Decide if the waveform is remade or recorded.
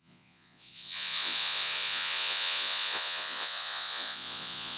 remade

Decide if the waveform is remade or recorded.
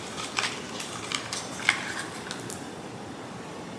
recorded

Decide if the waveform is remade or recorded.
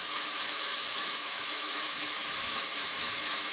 remade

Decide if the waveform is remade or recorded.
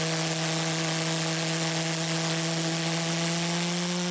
recorded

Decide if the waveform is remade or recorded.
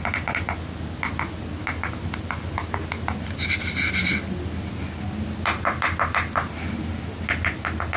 recorded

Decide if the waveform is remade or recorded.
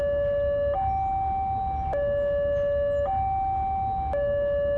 recorded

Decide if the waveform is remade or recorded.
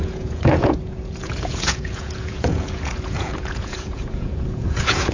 remade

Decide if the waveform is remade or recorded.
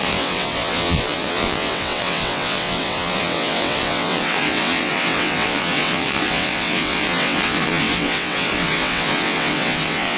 remade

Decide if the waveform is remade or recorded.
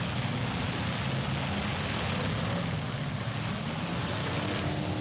recorded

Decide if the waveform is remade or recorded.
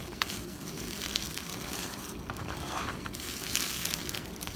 remade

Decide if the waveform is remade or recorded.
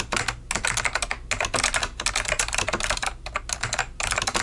recorded